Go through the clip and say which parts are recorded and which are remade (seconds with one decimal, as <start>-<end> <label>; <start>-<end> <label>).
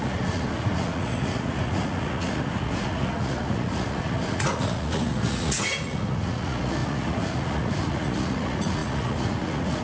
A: 0.0-9.8 remade